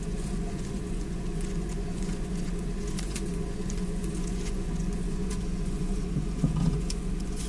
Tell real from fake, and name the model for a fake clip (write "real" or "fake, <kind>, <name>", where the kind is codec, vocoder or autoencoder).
fake, vocoder, Vocos